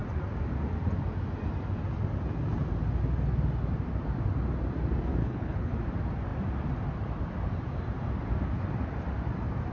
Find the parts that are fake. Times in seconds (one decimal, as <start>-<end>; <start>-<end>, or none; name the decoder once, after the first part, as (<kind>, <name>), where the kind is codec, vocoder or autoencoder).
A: 5.2-5.7 (codec, HILCodec)